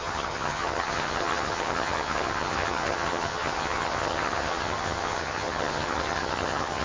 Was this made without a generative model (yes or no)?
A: no